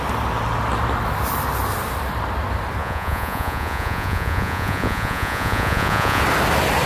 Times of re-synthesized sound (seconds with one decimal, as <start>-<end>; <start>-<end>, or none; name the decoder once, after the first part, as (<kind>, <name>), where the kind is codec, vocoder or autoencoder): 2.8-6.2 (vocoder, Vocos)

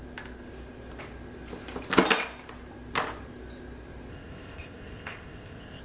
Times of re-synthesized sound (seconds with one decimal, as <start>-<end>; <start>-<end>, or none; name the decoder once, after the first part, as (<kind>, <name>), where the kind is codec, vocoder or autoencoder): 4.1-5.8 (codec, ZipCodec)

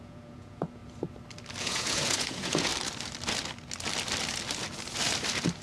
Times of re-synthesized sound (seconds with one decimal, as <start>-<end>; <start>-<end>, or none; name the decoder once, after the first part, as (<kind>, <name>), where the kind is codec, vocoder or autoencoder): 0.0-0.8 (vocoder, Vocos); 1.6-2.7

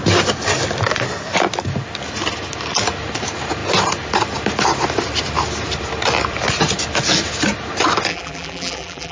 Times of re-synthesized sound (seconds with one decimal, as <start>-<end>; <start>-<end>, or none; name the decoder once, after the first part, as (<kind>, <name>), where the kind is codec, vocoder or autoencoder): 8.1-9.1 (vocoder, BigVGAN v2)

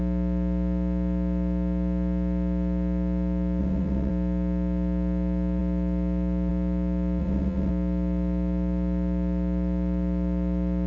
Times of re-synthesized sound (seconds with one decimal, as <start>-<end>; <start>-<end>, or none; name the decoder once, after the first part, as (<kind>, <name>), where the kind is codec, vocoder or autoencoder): 3.6-4.1 (vocoder, WaveNeXt); 7.2-7.7

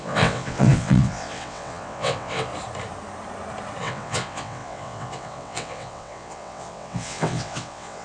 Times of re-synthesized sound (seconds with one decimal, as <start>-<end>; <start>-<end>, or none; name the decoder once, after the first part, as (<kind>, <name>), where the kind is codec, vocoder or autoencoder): 0.0-2.5 (vocoder, WaveNeXt); 3.8-8.0

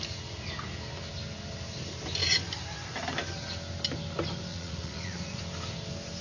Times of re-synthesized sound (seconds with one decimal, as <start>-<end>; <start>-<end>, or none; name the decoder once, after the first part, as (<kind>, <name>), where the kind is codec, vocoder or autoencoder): 4.5-5.4 (vocoder, Vocos)

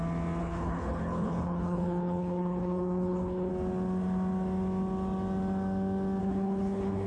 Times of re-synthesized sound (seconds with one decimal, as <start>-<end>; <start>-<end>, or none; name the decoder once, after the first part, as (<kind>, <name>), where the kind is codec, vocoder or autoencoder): 0.4-3.5 (codec, HILCodec); 6.2-7.1